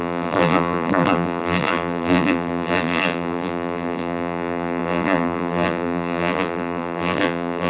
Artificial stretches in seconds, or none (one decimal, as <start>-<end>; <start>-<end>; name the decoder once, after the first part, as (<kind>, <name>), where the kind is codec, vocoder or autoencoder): 0.0-7.7 (vocoder, BigVGAN v2)